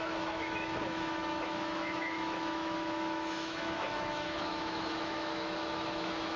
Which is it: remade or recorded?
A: remade